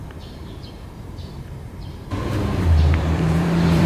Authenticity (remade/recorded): remade